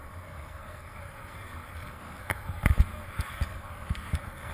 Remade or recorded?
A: remade